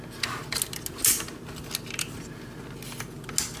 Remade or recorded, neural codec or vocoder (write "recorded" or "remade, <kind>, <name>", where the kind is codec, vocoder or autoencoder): recorded